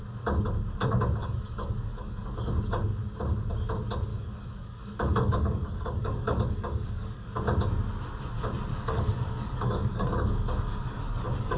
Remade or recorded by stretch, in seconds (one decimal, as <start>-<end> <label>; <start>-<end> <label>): 0.0-1.2 recorded; 1.2-2.5 remade; 2.5-4.1 recorded; 4.1-7.3 remade; 7.3-8.7 recorded; 8.7-11.6 remade